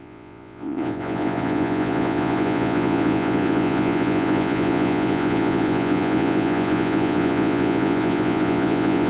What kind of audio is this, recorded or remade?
remade